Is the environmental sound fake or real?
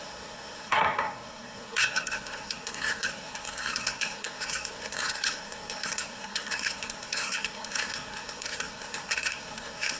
fake